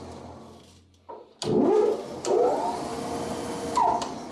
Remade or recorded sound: recorded